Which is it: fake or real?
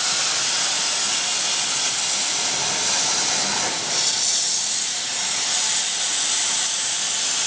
real